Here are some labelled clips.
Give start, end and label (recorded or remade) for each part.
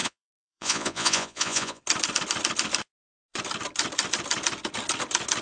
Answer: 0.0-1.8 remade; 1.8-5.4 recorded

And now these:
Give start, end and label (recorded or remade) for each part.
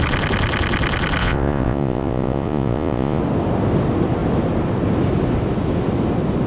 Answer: 0.0-1.2 recorded; 1.2-3.2 remade; 3.2-6.5 recorded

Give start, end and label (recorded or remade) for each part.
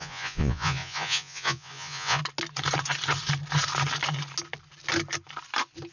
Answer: 0.0-2.2 remade; 2.2-5.9 recorded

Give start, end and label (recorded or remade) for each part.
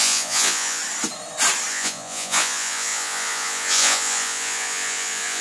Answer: 0.0-0.8 remade; 0.8-1.7 recorded; 1.7-5.4 remade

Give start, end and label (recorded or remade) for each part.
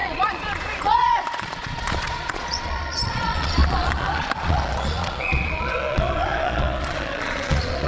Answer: 0.0-7.9 remade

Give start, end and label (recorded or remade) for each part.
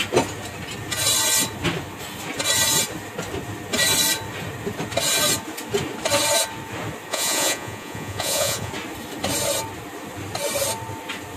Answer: 0.0-7.1 recorded; 7.1-8.7 remade; 8.7-11.4 recorded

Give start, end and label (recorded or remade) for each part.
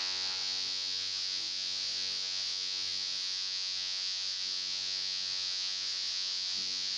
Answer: 0.0-7.0 remade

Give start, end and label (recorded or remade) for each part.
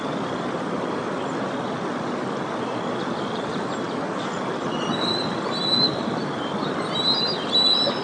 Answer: 0.0-8.0 recorded